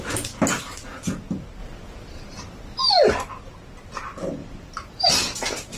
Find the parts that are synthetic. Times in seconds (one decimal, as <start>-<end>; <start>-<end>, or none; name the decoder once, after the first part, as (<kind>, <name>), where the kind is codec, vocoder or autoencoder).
4.4-5.1 (vocoder, BigVGAN v2)